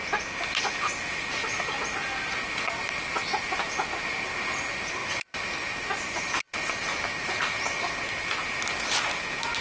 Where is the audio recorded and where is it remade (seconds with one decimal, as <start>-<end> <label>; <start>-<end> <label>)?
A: 0.0-9.6 recorded